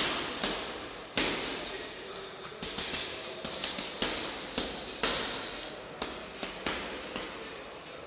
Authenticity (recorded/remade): recorded